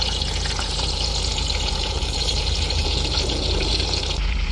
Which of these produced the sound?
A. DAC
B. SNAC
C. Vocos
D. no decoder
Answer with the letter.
C